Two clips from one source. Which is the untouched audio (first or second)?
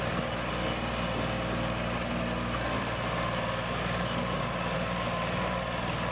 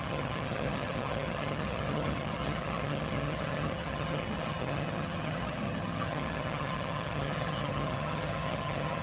first